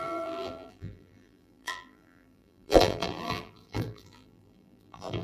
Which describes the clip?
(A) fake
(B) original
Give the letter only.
A